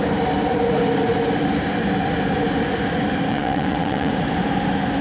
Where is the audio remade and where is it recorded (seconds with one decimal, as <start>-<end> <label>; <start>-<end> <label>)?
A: 0.0-3.3 recorded; 3.3-4.1 remade; 4.1-5.0 recorded